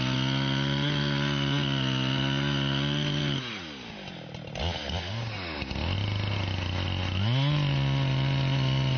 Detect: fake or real real